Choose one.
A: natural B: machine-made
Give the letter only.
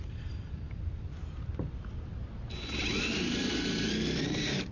A